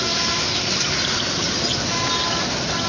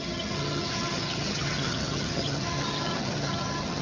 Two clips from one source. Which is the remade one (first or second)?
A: second